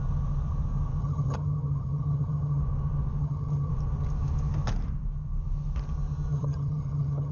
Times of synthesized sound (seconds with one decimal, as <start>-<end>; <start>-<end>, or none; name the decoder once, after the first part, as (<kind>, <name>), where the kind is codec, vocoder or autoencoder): 1.0-2.6 (vocoder, HiFi-GAN); 3.2-3.7; 6.3-7.3